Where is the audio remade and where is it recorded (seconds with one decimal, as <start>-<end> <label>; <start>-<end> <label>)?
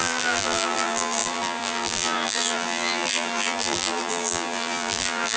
0.0-5.4 remade